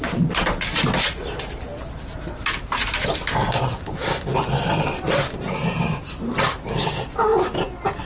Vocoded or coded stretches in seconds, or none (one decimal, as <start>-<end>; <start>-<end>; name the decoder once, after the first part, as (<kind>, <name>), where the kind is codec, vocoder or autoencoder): none

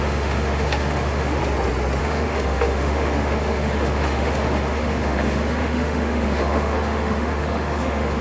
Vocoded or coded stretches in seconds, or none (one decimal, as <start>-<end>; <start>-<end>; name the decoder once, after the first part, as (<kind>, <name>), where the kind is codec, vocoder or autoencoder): 0.0-1.4 (autoencoder, DAC-VAE); 2.0-8.2

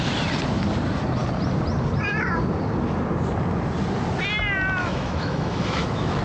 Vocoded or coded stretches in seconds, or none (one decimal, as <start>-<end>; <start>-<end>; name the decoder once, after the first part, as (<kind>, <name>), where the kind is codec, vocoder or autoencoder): 4.8-6.2 (autoencoder, DAC-VAE)

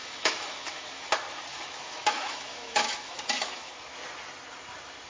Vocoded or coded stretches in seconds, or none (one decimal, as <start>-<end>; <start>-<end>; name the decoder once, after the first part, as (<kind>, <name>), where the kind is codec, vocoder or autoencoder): 0.0-1.1 (autoencoder, DAC-VAE); 1.5-3.7

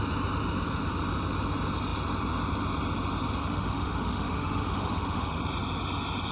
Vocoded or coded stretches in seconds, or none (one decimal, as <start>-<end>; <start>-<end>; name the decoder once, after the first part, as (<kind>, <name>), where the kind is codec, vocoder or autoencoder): 3.4-5.4 (autoencoder, DAC-VAE)

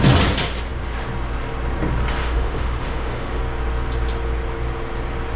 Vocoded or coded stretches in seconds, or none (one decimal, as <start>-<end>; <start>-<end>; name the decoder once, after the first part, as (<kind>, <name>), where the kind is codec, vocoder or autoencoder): 2.2-3.4 (autoencoder, DAC-VAE)